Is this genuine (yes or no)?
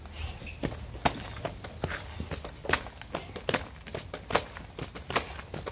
yes